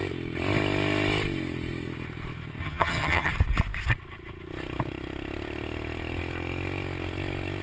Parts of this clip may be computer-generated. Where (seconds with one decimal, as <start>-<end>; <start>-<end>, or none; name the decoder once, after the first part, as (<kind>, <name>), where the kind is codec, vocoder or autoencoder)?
2.6-3.3 (vocoder, HiFi-GAN)